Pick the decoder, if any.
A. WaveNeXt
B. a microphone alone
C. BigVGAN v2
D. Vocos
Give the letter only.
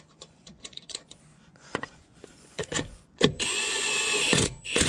D